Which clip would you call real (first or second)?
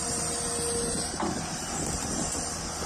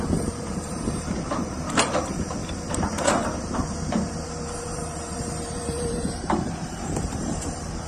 first